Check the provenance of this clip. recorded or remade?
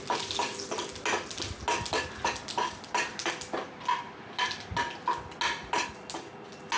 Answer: recorded